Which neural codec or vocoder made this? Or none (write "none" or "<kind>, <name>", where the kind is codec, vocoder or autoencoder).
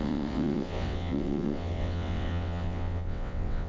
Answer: vocoder, WaveNeXt